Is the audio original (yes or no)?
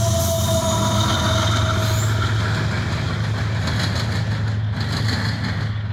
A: yes